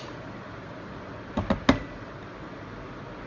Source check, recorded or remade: recorded